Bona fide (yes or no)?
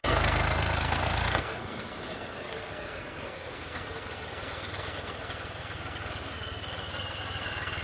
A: no